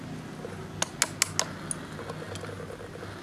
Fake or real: real